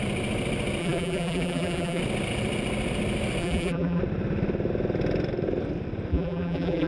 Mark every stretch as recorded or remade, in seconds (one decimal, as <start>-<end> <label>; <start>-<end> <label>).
0.0-0.8 recorded; 0.8-2.0 remade; 2.0-3.4 recorded; 3.4-4.0 remade; 4.0-6.1 recorded; 6.1-6.9 remade